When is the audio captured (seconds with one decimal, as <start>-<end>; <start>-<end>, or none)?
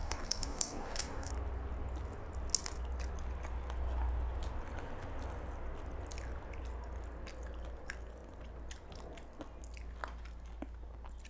1.3-11.3